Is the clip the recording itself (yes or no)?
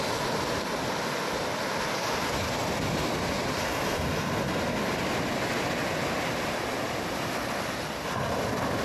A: yes